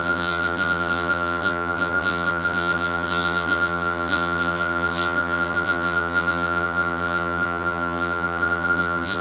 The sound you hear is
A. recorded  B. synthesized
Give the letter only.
B